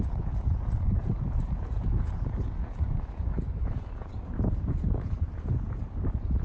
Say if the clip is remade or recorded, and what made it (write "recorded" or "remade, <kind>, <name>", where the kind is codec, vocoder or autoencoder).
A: remade, vocoder, Vocos